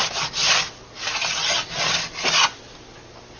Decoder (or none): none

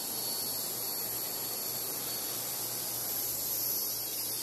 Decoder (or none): none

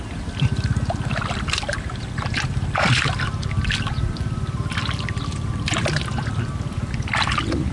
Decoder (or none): vocoder, BigVGAN v2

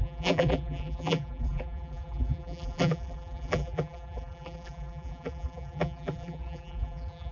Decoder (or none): vocoder, BigVGAN v2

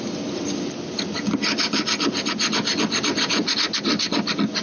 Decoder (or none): none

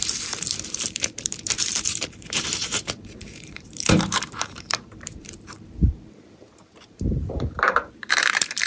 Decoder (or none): vocoder, BigVGAN v2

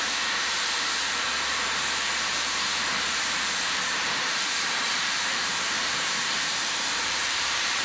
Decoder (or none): vocoder, BigVGAN v2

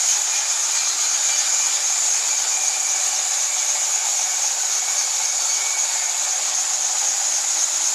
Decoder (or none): none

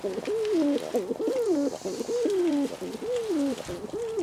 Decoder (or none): vocoder, BigVGAN v2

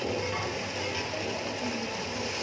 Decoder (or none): none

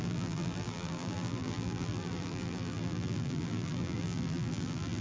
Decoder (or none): vocoder, BigVGAN v2